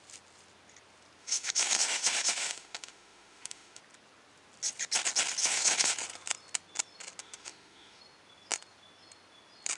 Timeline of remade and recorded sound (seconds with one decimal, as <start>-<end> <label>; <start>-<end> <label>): 0.0-1.2 recorded; 1.2-3.8 remade; 3.8-5.4 recorded; 5.4-5.9 remade; 5.9-7.2 recorded; 7.2-8.0 remade; 8.0-9.8 recorded